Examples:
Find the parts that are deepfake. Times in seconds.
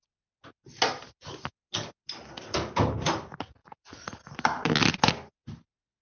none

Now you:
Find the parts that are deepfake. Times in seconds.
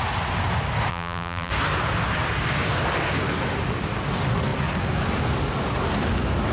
0.9-1.5